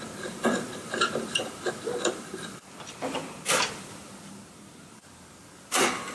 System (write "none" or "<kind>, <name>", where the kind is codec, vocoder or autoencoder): vocoder, BigVGAN v2